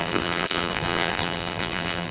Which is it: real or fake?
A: fake